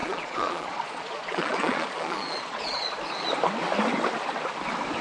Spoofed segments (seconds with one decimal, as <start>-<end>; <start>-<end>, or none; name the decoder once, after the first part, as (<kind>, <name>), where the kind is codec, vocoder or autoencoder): 0.0-3.0 (vocoder, Vocos)